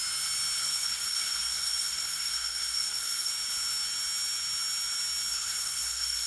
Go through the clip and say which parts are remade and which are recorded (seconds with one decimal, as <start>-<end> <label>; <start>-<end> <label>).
0.0-0.6 recorded; 0.6-3.3 remade; 3.3-5.3 recorded; 5.3-6.3 remade